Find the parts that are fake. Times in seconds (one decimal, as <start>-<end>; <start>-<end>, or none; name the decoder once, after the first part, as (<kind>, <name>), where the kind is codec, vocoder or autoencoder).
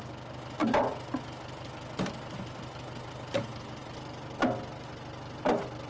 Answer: none